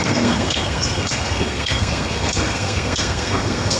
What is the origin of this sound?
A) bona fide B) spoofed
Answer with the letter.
B